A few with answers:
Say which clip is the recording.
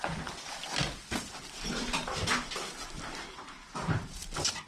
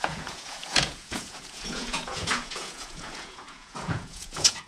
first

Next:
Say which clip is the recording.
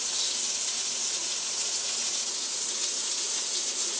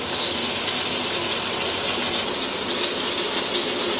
second